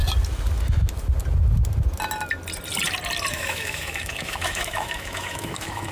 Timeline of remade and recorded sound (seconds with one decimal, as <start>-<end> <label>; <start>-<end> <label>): 0.0-3.3 recorded; 3.3-5.9 remade